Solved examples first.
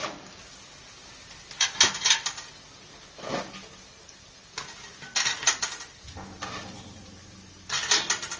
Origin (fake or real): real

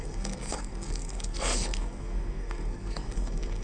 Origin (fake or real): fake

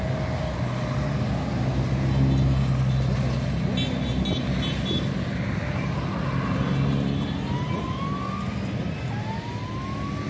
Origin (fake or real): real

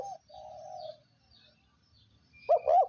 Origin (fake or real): real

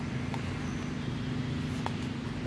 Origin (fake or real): real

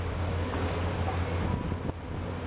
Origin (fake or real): real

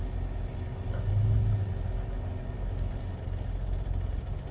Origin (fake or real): real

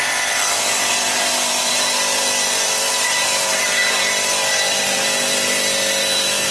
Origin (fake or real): fake